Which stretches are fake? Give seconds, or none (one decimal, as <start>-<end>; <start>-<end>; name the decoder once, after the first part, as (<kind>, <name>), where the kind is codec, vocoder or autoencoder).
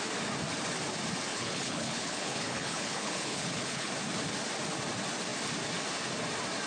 1.3-3.9 (codec, HILCodec)